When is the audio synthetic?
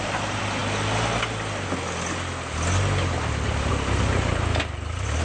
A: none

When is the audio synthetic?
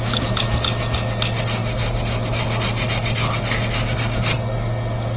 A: none